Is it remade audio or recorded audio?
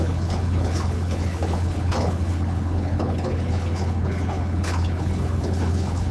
remade